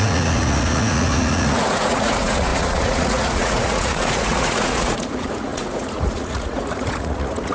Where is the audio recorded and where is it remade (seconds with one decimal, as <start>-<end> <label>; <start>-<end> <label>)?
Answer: 0.0-7.5 remade